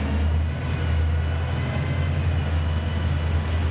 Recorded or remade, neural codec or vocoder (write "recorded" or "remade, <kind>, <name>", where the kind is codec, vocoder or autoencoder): recorded